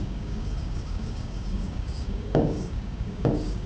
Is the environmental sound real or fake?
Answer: fake